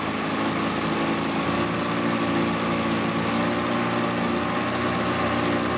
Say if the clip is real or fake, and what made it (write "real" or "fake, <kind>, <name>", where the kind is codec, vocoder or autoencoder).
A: real